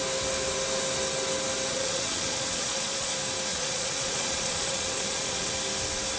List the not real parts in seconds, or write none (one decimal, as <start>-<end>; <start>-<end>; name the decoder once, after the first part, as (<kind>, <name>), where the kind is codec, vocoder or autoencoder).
1.7-3.1 (vocoder, Vocos); 3.5-5.5